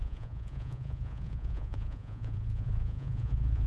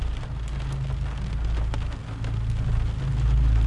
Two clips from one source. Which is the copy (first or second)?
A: first